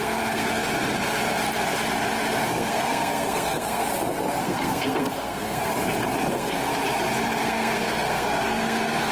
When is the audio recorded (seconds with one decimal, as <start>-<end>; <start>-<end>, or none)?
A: 0.6-2.3; 3.8-4.4; 5.7-6.3; 6.7-7.4